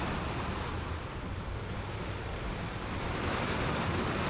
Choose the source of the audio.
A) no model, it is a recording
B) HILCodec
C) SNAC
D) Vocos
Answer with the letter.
A